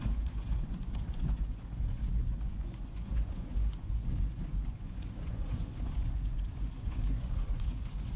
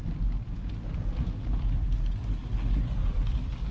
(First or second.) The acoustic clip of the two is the second